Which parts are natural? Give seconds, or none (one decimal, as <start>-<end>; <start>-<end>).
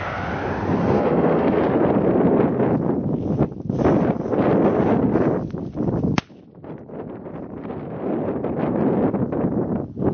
0.0-0.8; 1.6-10.1